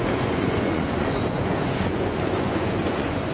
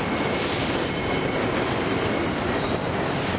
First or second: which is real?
second